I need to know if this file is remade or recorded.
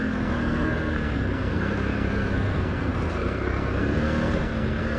remade